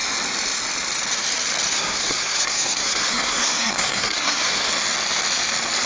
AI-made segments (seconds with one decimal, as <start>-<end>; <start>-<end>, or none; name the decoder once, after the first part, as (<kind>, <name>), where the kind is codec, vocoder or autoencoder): 1.7-4.7 (codec, SNAC)